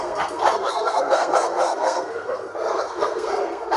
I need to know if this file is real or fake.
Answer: fake